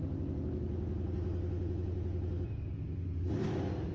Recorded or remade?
recorded